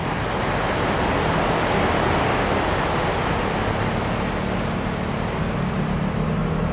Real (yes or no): yes